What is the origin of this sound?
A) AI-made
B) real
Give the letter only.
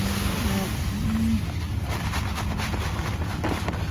B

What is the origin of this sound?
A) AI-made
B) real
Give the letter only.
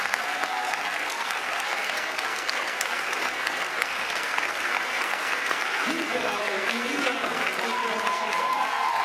A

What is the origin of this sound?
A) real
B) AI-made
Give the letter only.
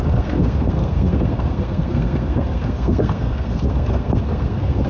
B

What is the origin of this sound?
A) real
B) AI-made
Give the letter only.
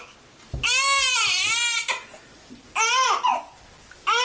A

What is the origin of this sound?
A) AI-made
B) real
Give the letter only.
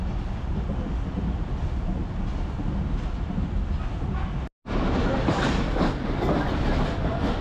B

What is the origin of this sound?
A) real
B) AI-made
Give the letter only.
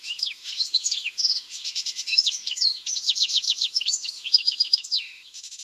B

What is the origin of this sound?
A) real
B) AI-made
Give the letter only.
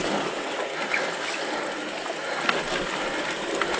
A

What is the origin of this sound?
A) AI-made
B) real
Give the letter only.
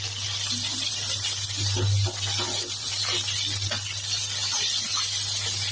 B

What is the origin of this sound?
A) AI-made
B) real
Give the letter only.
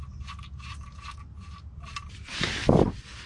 B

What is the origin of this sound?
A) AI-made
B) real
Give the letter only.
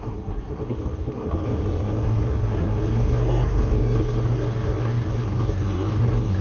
A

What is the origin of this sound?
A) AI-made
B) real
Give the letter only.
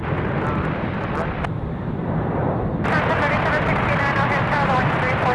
B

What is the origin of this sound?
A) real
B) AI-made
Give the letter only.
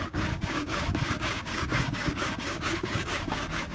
B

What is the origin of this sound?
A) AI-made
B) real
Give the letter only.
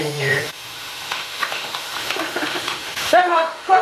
A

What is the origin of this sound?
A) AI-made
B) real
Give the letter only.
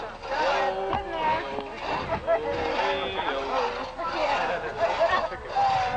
B